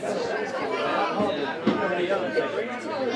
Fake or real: real